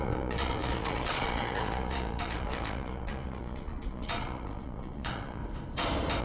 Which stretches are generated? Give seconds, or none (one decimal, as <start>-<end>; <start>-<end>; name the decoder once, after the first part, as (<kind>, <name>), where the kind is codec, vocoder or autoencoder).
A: 0.0-5.4 (vocoder, Vocos)